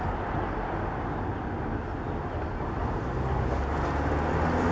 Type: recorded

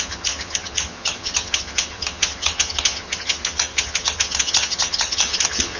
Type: remade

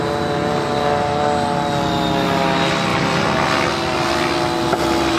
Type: recorded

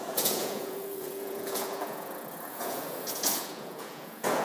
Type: remade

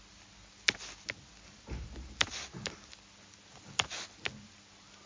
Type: recorded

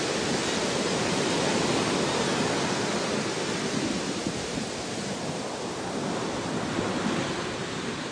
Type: recorded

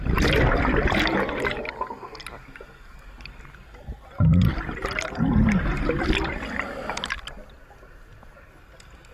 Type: recorded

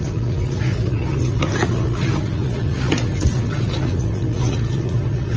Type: remade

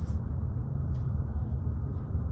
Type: recorded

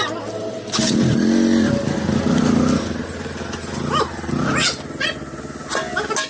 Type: recorded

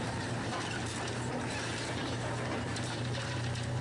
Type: remade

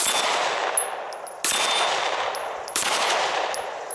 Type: recorded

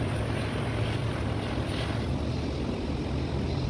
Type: recorded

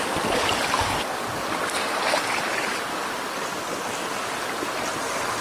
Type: recorded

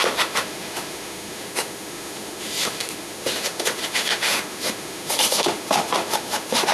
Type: remade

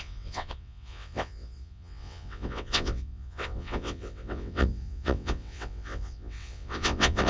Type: remade